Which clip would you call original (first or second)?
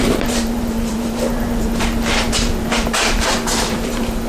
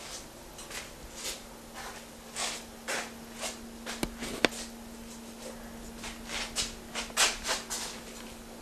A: second